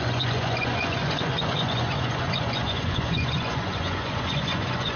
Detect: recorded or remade remade